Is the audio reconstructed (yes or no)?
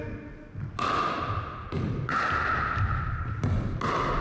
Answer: no